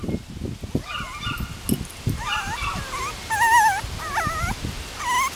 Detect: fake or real real